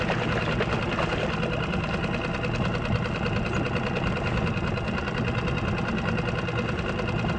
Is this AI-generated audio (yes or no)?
no